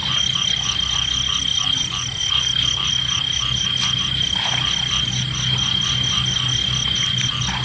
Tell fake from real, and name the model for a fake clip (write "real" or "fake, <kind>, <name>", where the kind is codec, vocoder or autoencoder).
real